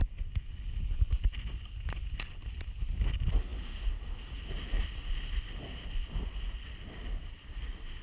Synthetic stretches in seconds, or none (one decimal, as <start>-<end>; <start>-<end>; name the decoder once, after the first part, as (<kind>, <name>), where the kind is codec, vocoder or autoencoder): none